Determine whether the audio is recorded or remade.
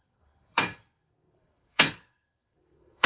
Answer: remade